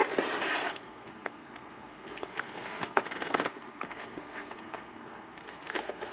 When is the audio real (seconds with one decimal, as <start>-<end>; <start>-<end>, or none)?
0.0-0.7